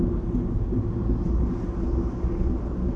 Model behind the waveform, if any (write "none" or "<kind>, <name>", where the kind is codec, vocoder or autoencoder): none